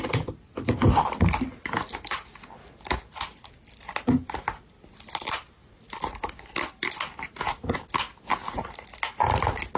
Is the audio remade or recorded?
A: recorded